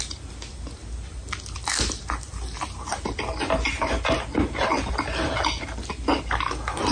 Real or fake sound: real